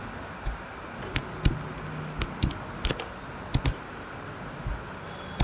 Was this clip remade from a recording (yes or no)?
no